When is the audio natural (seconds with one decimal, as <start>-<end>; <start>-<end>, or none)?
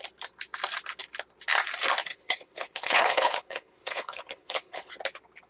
0.0-2.1; 4.9-5.5